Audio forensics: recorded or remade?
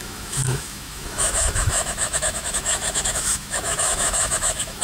remade